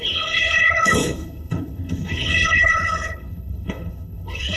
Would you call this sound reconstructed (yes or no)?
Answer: yes